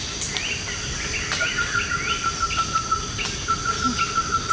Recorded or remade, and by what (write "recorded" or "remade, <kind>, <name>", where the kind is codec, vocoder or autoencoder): recorded